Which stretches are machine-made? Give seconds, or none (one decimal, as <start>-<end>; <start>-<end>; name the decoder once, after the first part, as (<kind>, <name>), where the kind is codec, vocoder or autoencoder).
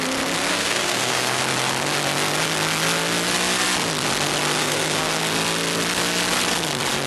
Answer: 0.5-1.4 (codec, SNAC); 4.6-5.2